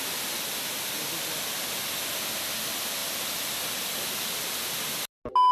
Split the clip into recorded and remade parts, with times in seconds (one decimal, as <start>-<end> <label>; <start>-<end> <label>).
0.0-5.5 recorded